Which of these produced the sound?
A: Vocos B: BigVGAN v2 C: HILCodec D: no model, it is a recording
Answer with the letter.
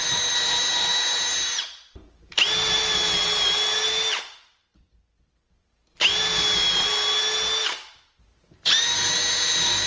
D